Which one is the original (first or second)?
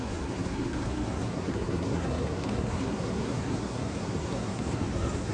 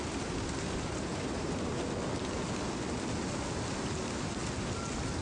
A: second